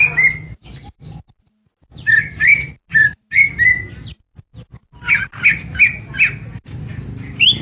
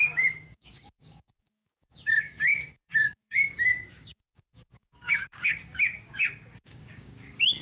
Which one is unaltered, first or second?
first